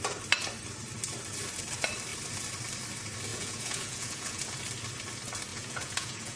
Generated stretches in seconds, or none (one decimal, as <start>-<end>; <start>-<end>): 3.3-4.4; 5.5-6.4